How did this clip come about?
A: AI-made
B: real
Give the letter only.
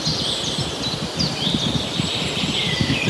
B